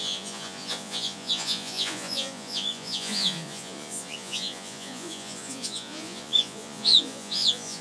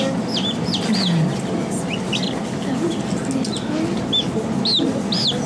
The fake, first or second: first